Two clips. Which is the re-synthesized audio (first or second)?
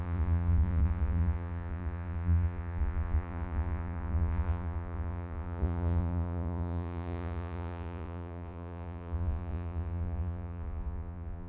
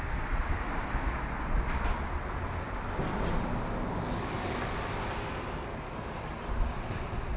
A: first